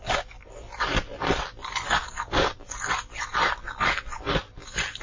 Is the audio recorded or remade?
recorded